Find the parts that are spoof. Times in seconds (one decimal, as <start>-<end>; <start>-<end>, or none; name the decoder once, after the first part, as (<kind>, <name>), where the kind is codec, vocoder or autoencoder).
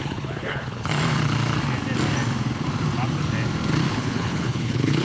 0.0-0.9 (codec, HILCodec); 3.9-5.0